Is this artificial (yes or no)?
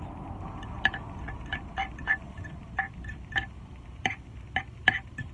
yes